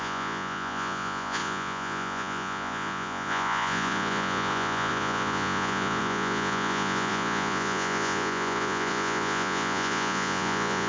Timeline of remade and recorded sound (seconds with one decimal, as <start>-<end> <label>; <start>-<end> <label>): 0.0-10.9 remade